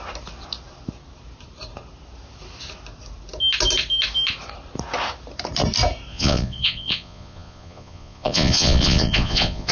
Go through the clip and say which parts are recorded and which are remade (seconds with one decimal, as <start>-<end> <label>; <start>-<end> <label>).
0.0-6.1 recorded; 6.1-9.7 remade